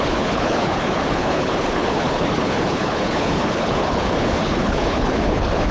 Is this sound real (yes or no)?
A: no